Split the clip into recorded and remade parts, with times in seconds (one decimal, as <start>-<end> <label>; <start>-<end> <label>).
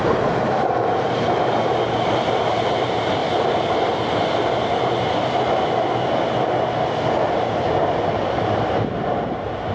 0.0-3.2 remade; 3.2-8.3 recorded; 8.3-9.7 remade